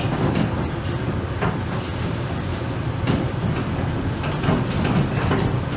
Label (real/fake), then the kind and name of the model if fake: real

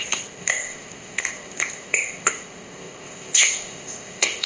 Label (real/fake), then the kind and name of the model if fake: fake, codec, ZipCodec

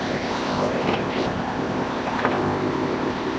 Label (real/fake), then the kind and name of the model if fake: fake, codec, ZipCodec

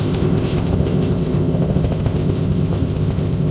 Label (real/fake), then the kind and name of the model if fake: fake, codec, ZipCodec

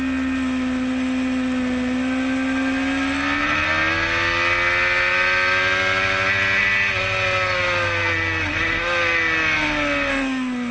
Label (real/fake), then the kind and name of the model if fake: real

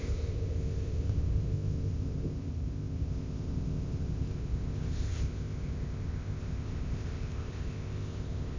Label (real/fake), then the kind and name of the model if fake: fake, codec, ZipCodec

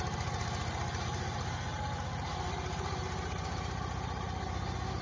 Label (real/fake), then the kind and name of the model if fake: real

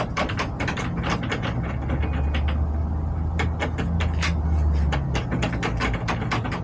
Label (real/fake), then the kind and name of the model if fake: real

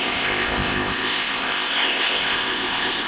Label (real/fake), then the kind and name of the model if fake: fake, codec, ZipCodec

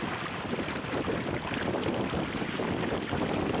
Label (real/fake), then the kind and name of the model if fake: real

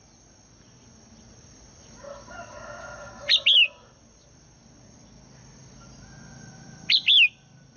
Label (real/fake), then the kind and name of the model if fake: real